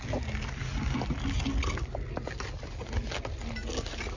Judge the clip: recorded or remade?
recorded